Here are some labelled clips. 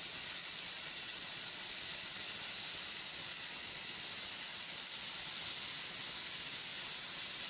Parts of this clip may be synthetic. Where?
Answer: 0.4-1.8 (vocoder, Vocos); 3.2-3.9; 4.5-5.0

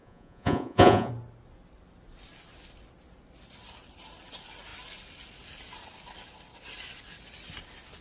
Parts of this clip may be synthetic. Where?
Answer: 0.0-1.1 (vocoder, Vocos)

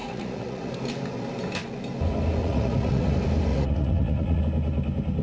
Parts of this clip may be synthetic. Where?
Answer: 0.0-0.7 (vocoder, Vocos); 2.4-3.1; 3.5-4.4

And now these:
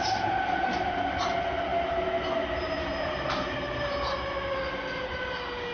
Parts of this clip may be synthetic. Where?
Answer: none

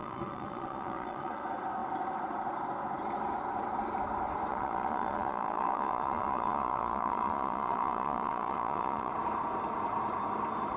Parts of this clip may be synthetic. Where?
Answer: 0.0-1.4 (vocoder, Vocos); 4.5-9.1